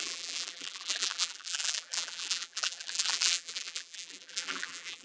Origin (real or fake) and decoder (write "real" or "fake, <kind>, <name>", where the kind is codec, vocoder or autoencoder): fake, vocoder, BigVGAN v2